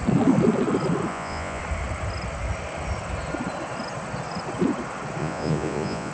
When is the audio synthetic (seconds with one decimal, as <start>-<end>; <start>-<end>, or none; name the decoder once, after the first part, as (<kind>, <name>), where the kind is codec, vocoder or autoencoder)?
1.1-1.6 (vocoder, Vocos); 5.2-6.1